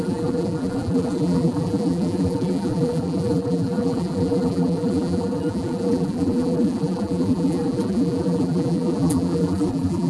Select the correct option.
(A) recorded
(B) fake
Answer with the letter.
B